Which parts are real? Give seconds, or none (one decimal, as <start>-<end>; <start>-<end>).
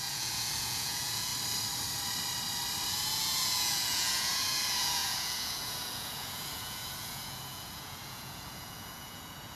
1.3-2.9